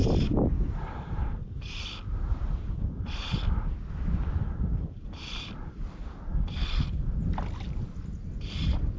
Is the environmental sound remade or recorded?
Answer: recorded